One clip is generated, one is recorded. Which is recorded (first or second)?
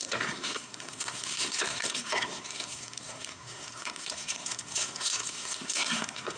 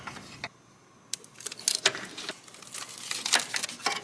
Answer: second